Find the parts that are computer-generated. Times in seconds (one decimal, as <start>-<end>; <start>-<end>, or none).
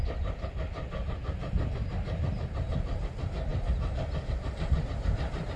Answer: none